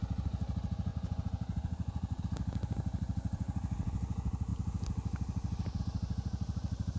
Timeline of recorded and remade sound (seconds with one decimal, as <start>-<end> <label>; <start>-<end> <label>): 0.0-0.9 recorded; 0.9-2.2 remade; 2.2-7.0 recorded